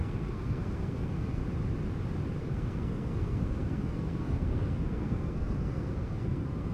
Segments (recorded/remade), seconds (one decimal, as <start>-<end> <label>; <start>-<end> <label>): 0.0-1.4 remade; 1.4-2.4 recorded; 2.4-6.7 remade